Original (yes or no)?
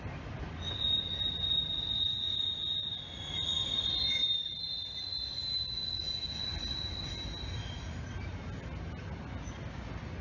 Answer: yes